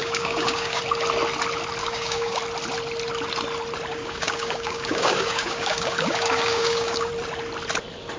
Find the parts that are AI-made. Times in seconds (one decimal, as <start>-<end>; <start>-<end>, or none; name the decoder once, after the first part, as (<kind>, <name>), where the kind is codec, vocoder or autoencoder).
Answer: 0.0-0.8 (codec, DAC); 1.8-2.4; 3.9-7.1